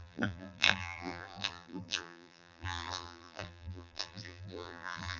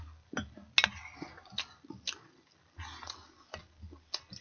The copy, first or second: first